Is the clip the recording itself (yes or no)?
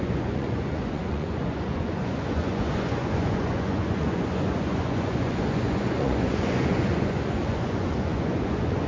no